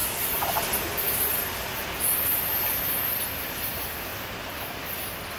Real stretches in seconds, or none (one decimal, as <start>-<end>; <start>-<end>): 0.0-5.4